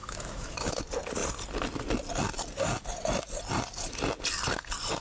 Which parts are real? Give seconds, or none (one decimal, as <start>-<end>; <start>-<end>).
0.7-5.0